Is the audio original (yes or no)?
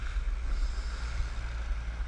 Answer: yes